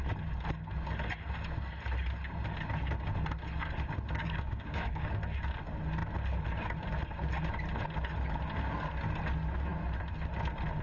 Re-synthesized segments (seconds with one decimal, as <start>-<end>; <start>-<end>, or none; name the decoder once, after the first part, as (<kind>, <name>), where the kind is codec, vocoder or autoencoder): 4.2-5.1 (codec, DAC)